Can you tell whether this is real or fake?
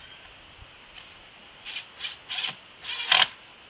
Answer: real